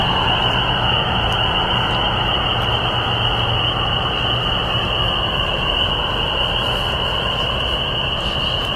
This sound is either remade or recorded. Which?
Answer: recorded